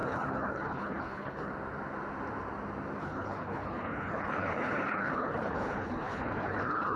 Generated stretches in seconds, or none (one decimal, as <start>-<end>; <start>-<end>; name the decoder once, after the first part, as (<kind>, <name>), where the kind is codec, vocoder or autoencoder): 0.0-1.5 (codec, HILCodec); 3.0-7.0